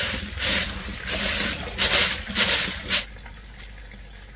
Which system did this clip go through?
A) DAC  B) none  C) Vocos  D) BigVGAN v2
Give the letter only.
B